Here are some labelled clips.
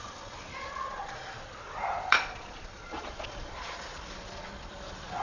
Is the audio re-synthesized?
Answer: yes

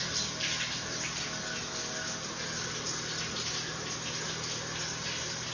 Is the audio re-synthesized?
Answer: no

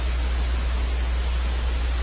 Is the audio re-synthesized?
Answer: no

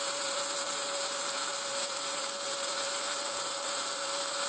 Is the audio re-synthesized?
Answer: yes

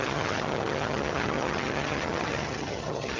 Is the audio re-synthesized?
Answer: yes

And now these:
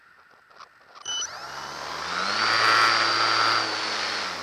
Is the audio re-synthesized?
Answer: no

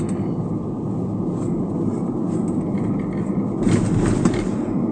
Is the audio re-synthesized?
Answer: no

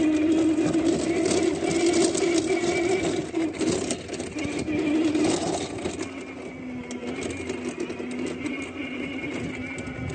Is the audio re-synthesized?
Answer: no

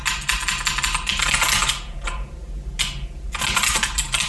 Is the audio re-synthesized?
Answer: no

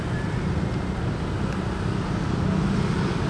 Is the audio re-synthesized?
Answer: no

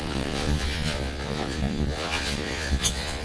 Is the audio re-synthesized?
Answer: yes